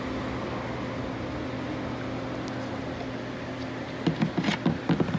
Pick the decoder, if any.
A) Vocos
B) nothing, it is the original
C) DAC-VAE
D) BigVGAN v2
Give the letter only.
B